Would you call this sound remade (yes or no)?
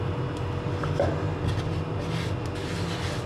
no